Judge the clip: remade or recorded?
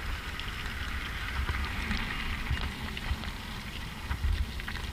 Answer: recorded